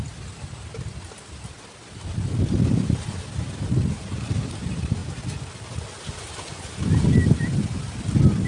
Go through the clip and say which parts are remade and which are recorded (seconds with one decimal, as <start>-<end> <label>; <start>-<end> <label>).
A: 0.0-8.5 recorded